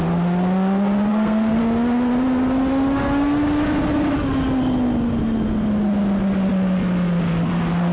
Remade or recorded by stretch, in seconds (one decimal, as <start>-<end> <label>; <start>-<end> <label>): 0.0-1.1 recorded; 1.1-1.6 remade; 1.6-7.9 recorded